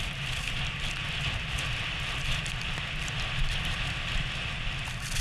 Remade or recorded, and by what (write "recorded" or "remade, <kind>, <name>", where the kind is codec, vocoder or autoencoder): recorded